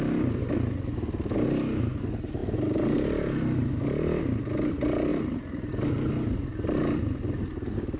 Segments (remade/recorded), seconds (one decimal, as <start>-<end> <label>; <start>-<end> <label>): 0.0-8.0 recorded